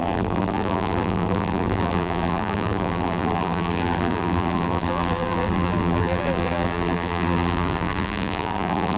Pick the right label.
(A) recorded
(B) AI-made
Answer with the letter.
B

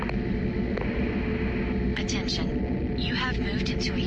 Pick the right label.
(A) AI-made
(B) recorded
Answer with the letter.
B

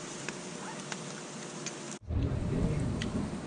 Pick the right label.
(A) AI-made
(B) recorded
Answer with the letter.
A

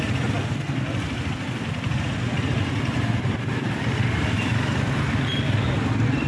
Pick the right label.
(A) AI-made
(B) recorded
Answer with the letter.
B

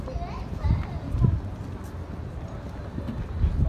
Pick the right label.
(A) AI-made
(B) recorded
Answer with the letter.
B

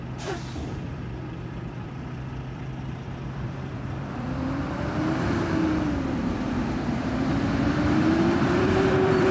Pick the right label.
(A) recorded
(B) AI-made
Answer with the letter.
B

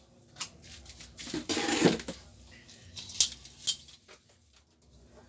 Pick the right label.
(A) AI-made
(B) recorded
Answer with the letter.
B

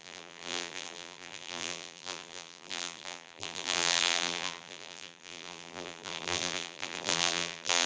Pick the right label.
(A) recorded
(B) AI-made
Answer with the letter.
B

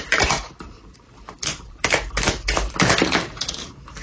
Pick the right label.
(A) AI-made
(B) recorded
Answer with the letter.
A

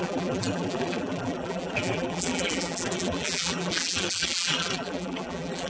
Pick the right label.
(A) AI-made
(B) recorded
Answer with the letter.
A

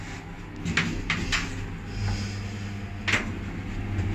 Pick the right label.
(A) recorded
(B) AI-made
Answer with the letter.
A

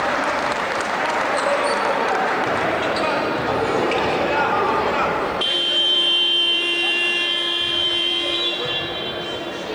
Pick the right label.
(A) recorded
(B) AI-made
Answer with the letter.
B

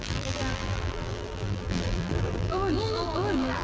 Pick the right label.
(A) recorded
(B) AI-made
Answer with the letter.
B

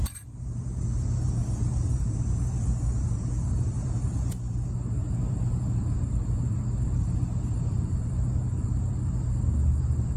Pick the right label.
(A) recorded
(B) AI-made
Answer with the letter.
B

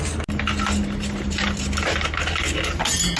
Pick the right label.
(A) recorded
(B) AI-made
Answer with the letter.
A